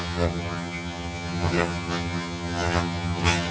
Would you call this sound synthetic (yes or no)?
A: yes